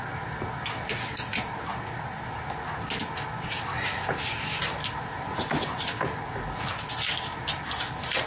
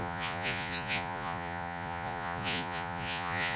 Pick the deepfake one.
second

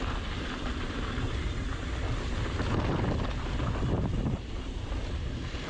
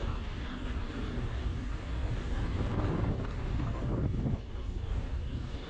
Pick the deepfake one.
second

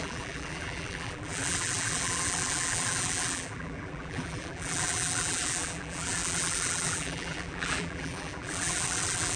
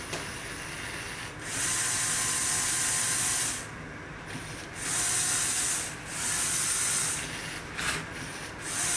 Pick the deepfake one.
first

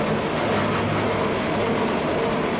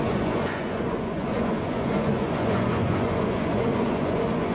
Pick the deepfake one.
second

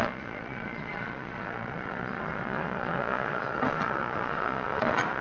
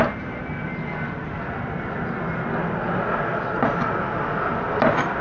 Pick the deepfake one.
first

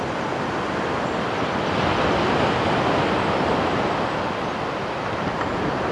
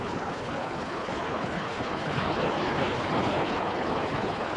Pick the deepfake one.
second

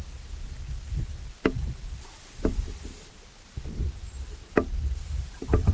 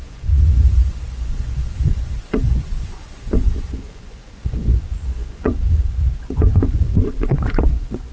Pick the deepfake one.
second